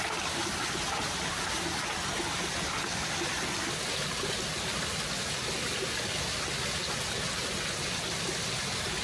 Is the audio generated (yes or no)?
no